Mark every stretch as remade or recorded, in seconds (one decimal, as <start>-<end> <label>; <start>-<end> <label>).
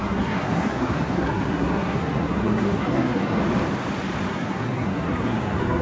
0.0-3.4 remade; 3.4-4.3 recorded; 4.3-5.8 remade